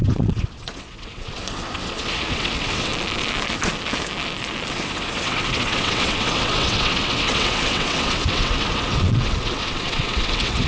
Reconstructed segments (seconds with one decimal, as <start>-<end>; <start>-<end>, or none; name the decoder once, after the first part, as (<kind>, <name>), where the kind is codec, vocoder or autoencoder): 0.0-2.9 (vocoder, WaveNeXt); 4.7-10.7